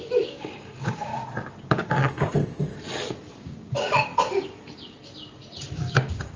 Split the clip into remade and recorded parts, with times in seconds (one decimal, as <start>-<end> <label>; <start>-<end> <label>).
0.0-1.1 remade; 1.1-1.6 recorded; 1.6-2.7 remade; 2.7-3.4 recorded; 3.4-4.1 remade; 4.1-5.7 recorded; 5.7-6.4 remade